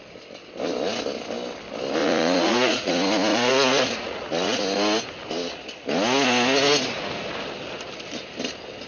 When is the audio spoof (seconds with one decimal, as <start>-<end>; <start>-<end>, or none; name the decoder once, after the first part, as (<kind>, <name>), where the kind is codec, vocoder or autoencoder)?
2.0-2.9 (vocoder, Vocos); 3.3-4.6